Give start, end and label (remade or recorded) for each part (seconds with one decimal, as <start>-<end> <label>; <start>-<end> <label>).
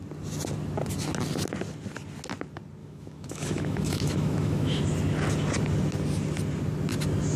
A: 0.0-2.8 recorded; 2.8-4.8 remade; 4.8-7.4 recorded